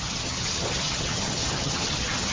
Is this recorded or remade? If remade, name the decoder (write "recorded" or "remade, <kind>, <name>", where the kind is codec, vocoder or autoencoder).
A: remade, vocoder, HiFi-GAN